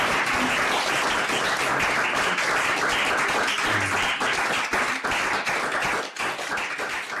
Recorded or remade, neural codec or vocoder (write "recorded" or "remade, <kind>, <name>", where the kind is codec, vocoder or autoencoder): recorded